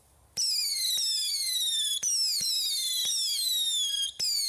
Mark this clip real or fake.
real